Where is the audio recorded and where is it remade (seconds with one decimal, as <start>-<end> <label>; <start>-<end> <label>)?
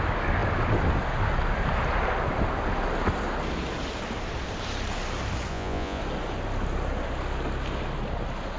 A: 0.0-5.5 recorded; 5.5-6.0 remade; 6.0-8.6 recorded